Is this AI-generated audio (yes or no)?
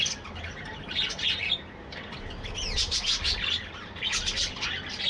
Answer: no